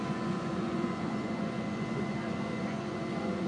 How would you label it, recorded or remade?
remade